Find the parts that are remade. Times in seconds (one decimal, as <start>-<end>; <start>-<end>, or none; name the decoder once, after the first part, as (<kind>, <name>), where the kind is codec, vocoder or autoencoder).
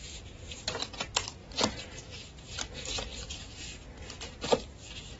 none